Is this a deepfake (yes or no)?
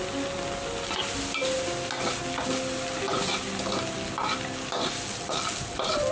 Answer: no